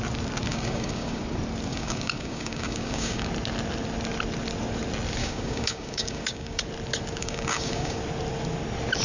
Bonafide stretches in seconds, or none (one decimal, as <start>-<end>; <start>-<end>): 0.0-0.5; 1.2-1.7; 3.3-5.2; 6.6-7.2; 8.0-9.0